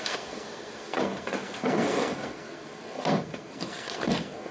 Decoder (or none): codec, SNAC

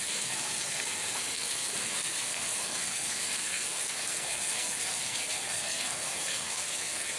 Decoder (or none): codec, SNAC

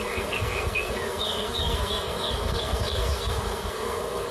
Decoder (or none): codec, SNAC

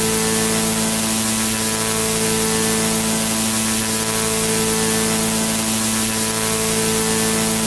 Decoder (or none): none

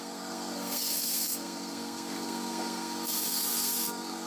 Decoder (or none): codec, SNAC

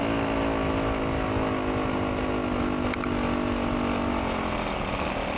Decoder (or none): none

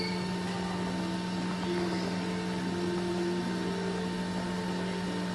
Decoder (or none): none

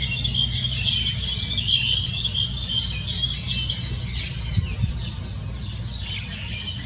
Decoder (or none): none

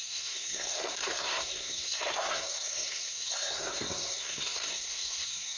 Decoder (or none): codec, SNAC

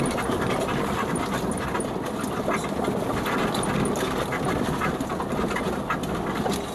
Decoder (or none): none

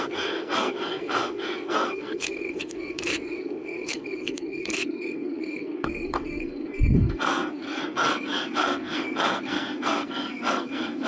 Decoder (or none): codec, SNAC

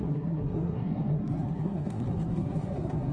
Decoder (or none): codec, SNAC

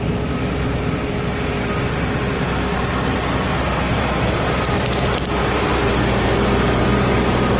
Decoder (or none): none